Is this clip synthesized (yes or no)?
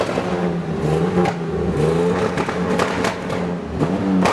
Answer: no